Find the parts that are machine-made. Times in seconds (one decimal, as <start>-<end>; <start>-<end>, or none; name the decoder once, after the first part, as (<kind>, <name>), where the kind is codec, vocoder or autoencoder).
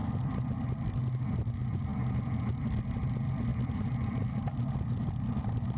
3.5-5.8 (vocoder, BigVGAN v2)